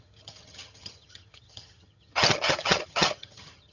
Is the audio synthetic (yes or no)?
yes